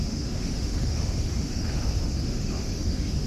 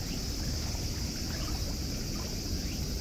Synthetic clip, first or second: first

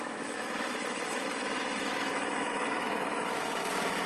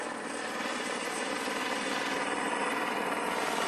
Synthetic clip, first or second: first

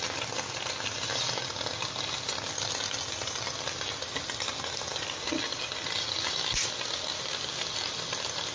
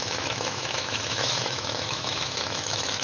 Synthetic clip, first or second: second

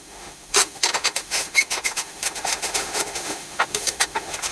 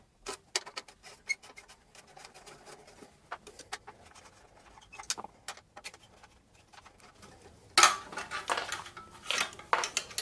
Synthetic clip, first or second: first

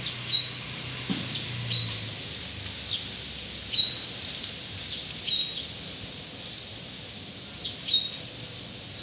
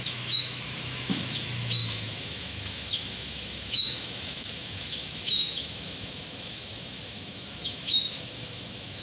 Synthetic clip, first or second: second